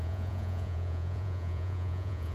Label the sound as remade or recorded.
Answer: remade